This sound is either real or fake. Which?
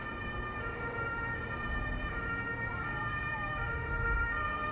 real